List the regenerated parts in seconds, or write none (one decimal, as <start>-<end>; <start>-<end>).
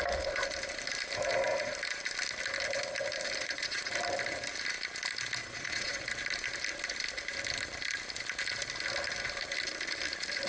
3.4-3.9; 5.4-6.0